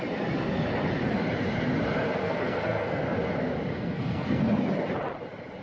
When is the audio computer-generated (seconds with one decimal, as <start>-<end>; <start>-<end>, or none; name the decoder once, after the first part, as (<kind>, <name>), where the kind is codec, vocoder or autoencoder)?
2.2-3.0 (codec, SNAC); 3.7-4.4